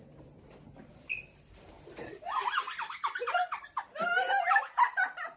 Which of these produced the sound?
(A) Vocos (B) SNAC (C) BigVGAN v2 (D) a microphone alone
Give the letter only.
D